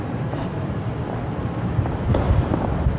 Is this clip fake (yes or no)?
yes